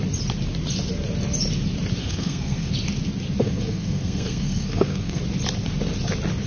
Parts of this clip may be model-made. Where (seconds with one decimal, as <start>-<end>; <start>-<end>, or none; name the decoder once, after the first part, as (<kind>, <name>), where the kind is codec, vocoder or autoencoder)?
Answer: 2.0-2.7 (codec, SNAC); 3.4-5.2